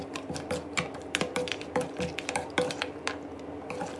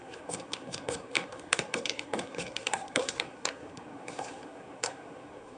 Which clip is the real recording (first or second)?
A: first